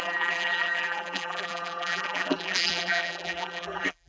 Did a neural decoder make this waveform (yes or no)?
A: yes